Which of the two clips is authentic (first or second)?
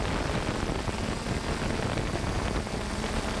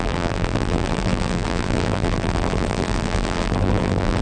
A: first